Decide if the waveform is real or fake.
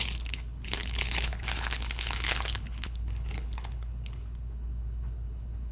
fake